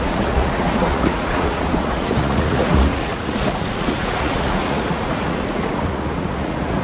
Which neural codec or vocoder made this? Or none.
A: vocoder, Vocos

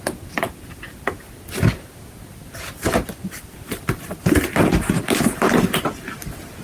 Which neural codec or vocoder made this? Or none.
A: none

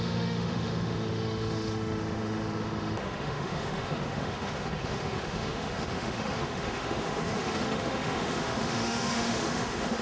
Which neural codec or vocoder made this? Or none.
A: autoencoder, DAC-VAE